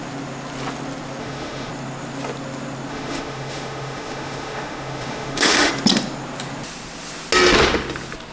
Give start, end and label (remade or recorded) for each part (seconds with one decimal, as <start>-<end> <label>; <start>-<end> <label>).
0.0-1.2 recorded; 1.2-1.7 remade; 1.7-2.9 recorded; 2.9-5.7 remade; 5.7-8.3 recorded